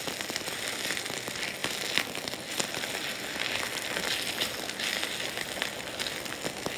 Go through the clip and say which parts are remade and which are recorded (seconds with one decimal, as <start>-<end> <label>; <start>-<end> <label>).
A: 0.0-6.8 recorded